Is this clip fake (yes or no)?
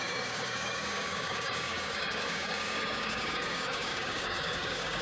yes